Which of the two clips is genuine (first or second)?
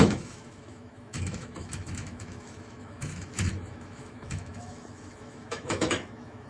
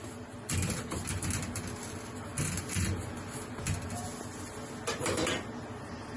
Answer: second